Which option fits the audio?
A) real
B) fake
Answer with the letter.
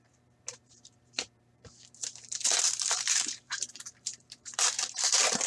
B